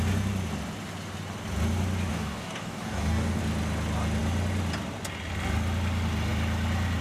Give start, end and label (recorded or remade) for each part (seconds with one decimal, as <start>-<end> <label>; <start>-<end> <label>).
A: 0.0-2.1 recorded; 2.1-3.4 remade; 3.4-7.0 recorded